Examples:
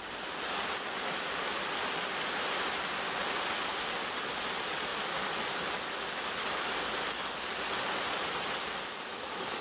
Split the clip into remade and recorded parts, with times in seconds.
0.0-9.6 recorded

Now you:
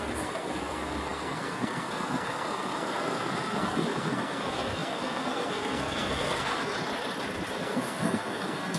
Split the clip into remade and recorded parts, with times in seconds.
0.0-6.7 remade; 6.7-7.5 recorded; 7.5-8.8 remade

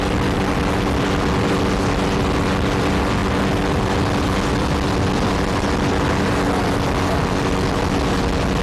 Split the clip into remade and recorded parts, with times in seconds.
0.0-8.6 recorded

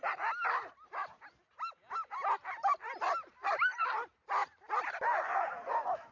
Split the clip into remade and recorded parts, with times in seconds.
0.0-6.1 recorded

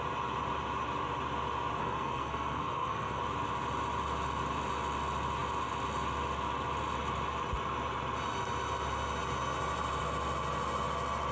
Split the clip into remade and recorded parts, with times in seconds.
0.0-1.8 recorded; 1.8-3.2 remade; 3.2-11.3 recorded

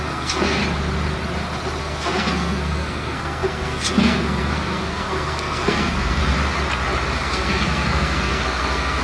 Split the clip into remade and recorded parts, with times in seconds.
0.0-0.6 remade; 0.6-1.8 recorded; 1.8-6.2 remade; 6.2-7.2 recorded; 7.2-9.0 remade

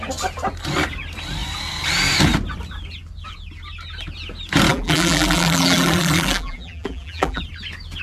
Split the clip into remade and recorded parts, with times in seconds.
0.0-4.7 recorded; 4.7-7.4 remade; 7.4-8.0 recorded